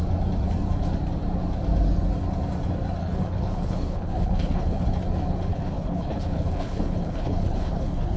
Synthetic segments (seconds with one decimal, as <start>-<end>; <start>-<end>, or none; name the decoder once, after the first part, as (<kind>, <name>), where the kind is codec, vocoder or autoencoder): 3.0-4.9 (codec, HILCodec); 5.5-8.2